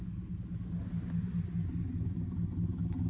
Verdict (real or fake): real